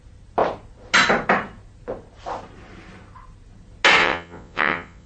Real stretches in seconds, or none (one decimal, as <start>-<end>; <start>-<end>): 0.0-4.0